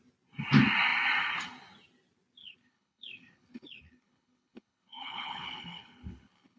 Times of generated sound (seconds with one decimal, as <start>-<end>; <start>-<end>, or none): 2.4-6.6